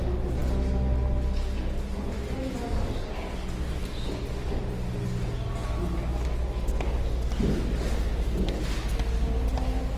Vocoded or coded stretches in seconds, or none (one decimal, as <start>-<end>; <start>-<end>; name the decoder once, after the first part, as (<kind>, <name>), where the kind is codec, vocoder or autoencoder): none